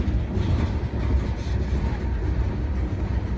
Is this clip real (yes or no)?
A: yes